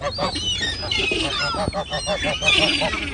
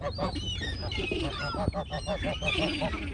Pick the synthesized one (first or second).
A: second